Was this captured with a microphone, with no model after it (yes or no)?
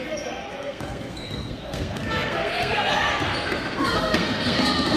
no